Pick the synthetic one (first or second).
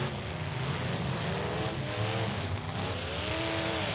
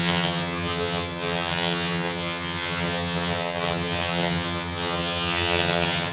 second